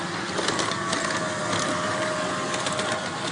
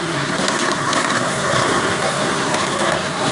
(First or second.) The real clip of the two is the first